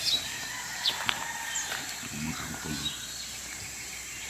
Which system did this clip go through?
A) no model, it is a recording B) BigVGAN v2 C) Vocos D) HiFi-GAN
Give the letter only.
B